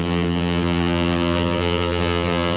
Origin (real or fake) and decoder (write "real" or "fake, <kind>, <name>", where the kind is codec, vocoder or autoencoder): fake, vocoder, BigVGAN v2